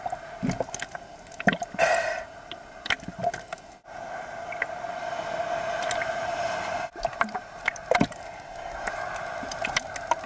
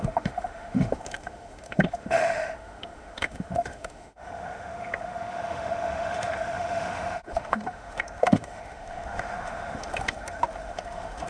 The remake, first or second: second